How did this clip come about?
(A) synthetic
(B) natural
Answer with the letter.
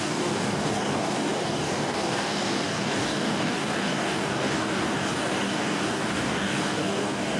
A